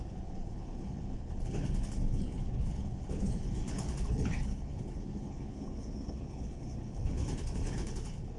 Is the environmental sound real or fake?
fake